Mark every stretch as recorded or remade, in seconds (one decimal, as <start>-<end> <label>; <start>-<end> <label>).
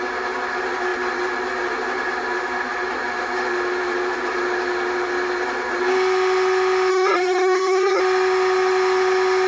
0.0-6.9 recorded; 6.9-8.0 remade; 8.0-9.5 recorded